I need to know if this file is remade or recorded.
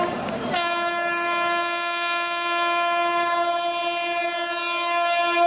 remade